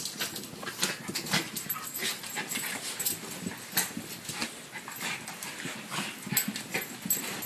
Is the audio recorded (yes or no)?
yes